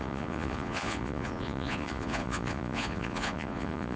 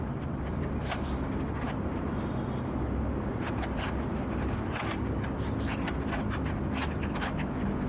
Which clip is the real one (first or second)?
second